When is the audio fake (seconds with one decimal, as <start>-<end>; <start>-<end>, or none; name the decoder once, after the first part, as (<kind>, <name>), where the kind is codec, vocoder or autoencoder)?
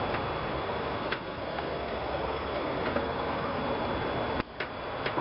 0.5-3.6 (codec, SNAC)